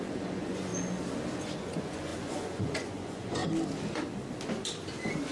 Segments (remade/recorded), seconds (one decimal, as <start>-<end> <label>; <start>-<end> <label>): 0.0-0.7 remade; 0.7-1.4 recorded; 1.4-3.4 remade; 3.4-5.3 recorded